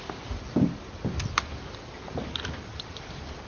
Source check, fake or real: real